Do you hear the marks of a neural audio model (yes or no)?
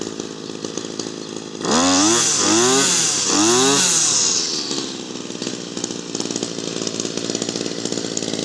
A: no